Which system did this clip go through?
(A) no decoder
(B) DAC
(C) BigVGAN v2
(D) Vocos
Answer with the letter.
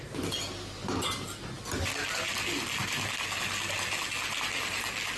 A